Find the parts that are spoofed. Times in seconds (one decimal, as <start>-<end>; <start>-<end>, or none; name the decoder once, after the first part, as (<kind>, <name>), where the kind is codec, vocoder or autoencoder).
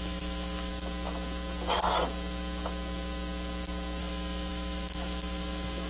0.0-0.7 (autoencoder, DAC-VAE); 4.0-5.9